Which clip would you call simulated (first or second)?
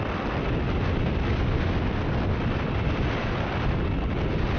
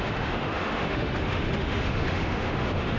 second